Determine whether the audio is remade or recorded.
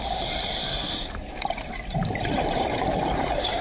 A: remade